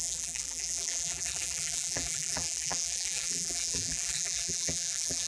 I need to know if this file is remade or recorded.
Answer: remade